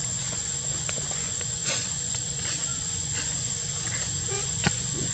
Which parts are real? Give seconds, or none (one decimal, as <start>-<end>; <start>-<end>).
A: none